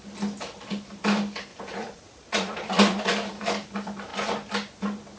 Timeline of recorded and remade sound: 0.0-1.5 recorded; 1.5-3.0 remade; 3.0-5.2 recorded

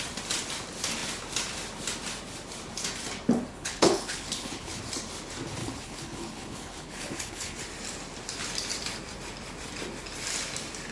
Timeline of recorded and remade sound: 0.0-3.5 recorded; 3.5-4.8 remade; 4.8-5.6 recorded; 5.6-7.6 remade; 7.6-10.9 recorded

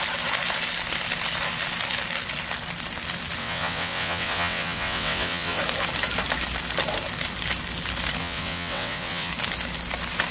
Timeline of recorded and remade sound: 0.0-3.4 recorded; 3.4-5.6 remade; 5.6-8.2 recorded; 8.2-9.3 remade; 9.3-10.3 recorded

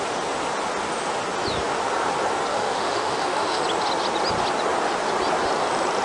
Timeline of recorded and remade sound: 0.0-2.5 recorded; 2.5-3.6 remade; 3.6-6.0 recorded

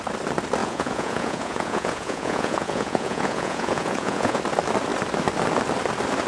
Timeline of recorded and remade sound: 0.0-0.6 recorded; 0.6-4.4 remade; 4.4-6.3 recorded

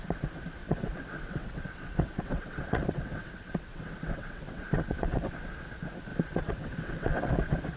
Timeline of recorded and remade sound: 0.0-0.6 recorded; 0.6-5.3 remade; 5.3-6.1 recorded; 6.1-7.3 remade; 7.3-7.8 recorded

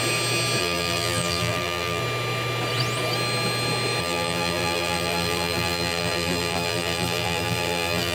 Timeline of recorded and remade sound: 0.0-0.6 recorded; 0.6-2.0 remade; 2.0-4.0 recorded; 4.0-8.1 remade

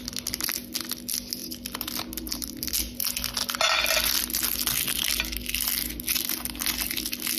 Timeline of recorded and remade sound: 0.0-7.4 recorded